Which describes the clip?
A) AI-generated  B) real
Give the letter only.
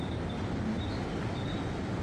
B